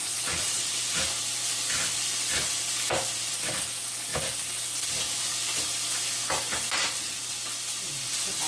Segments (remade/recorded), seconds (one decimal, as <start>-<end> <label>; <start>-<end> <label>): 0.0-0.7 remade; 0.7-8.5 recorded